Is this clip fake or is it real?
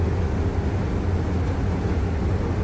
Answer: real